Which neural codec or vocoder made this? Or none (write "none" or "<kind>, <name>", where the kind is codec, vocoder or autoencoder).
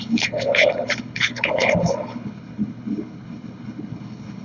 codec, HILCodec